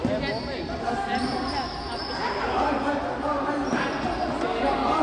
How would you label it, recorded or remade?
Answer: recorded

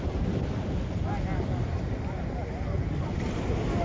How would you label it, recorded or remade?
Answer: recorded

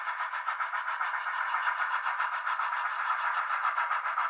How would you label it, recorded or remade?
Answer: recorded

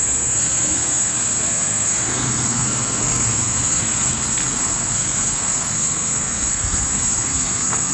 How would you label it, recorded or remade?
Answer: remade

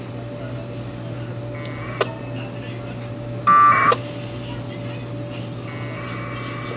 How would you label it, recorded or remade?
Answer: recorded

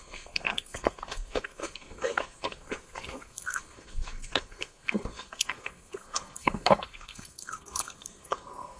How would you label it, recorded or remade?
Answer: remade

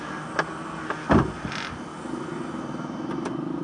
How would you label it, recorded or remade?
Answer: recorded